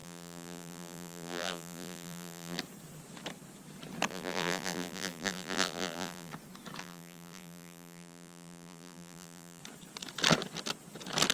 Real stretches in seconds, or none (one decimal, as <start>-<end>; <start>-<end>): 2.6-4.1; 6.3-6.8; 9.6-11.3